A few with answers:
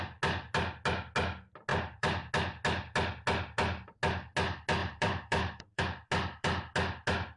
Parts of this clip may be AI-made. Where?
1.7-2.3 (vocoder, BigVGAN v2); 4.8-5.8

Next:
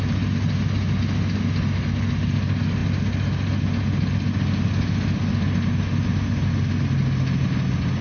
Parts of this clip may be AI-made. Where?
none

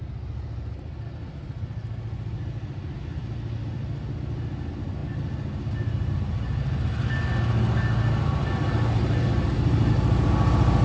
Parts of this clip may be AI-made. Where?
none

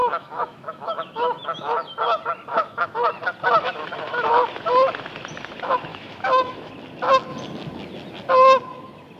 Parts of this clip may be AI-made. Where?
0.0-1.9 (autoencoder, DAC-VAE); 2.5-3.1; 5.9-6.7

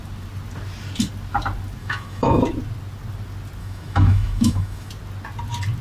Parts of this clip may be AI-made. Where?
1.8-2.4 (autoencoder, DAC-VAE); 3.6-4.9

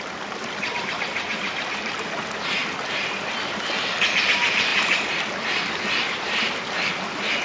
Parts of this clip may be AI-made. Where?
none

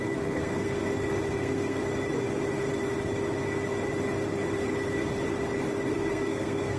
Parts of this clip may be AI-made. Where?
0.0-0.8 (codec, SNAC); 1.3-1.8; 5.9-6.8